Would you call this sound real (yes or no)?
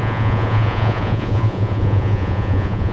no